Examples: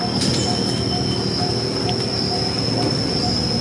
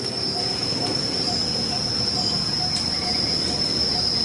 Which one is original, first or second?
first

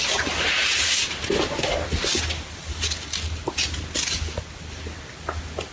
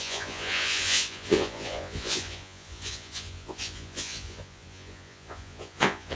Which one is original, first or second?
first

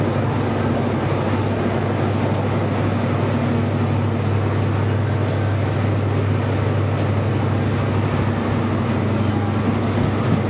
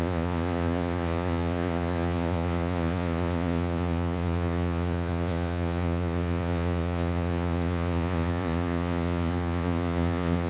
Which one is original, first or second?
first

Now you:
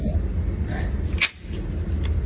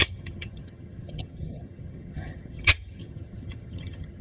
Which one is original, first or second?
first